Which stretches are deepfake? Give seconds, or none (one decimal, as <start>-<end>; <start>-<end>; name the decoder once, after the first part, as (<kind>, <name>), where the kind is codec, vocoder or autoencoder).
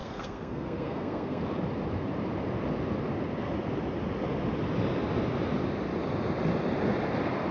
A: 0.0-1.4 (codec, SNAC)